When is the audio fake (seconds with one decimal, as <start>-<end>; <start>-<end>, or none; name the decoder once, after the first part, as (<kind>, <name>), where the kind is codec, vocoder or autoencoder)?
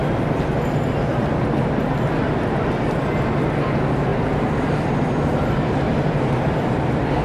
1.1-1.8 (vocoder, BigVGAN v2); 4.1-7.2